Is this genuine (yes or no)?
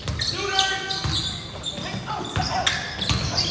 yes